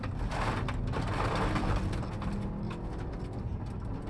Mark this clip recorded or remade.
recorded